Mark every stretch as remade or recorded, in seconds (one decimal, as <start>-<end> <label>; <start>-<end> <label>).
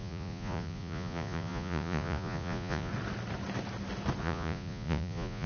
0.0-2.9 remade; 2.9-4.2 recorded; 4.2-5.5 remade